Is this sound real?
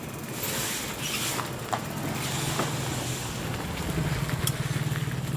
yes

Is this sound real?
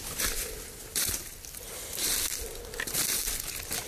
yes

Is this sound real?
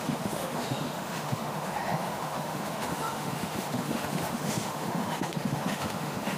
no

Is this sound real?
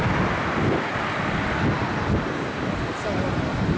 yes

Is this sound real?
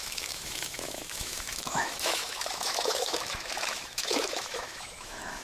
no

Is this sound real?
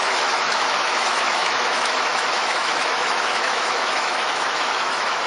no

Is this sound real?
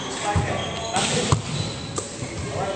yes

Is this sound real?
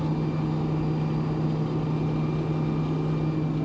yes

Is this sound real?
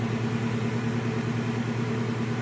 yes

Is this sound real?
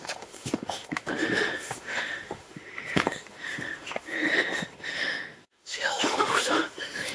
no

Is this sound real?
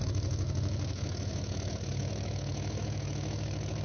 no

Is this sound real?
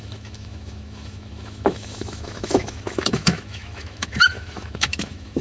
no